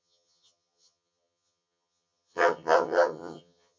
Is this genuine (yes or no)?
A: no